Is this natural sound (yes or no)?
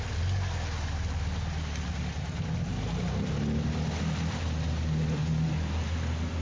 yes